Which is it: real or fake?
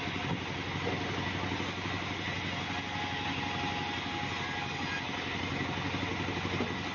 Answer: real